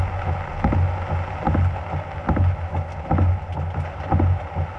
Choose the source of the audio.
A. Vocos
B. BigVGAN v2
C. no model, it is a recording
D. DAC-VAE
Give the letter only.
C